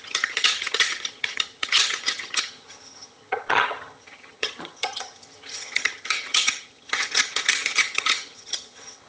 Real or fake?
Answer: fake